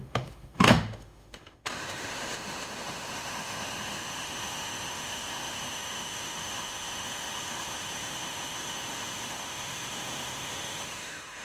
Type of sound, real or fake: fake